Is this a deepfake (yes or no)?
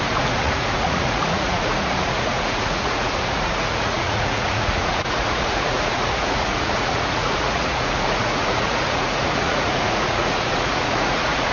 yes